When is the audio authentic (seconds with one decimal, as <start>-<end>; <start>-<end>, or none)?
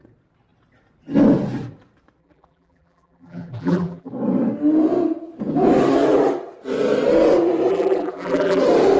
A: 0.0-2.2; 4.1-7.7; 8.6-9.0